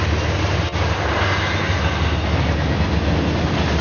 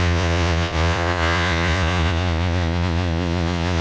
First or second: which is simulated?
second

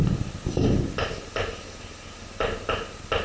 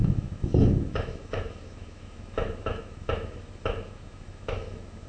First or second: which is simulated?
second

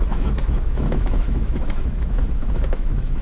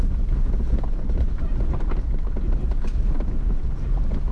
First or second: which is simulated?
first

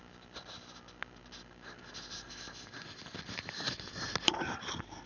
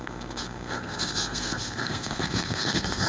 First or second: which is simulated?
second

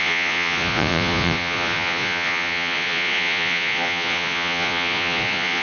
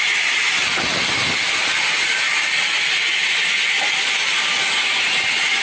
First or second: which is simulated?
first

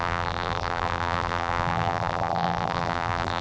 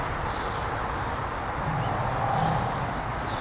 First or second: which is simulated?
first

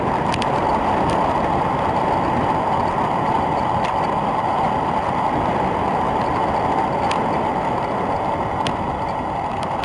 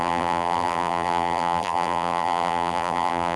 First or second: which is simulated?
second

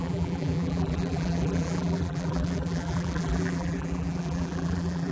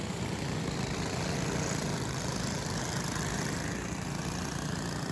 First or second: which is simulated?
first